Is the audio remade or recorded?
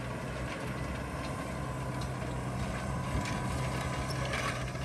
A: recorded